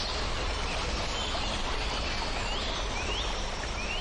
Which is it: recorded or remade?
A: recorded